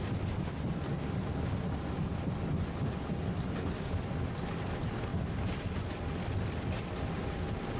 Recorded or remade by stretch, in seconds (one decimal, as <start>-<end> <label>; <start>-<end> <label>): 0.0-7.8 recorded